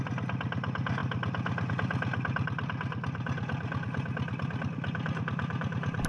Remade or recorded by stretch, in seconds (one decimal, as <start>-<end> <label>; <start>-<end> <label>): 0.0-6.1 recorded